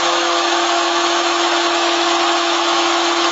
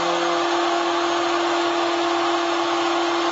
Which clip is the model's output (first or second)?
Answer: first